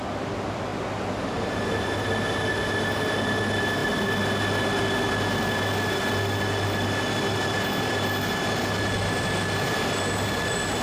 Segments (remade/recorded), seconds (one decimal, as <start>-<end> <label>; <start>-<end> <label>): 0.0-10.8 recorded